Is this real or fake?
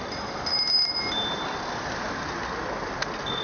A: real